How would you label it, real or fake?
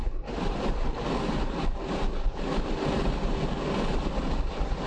real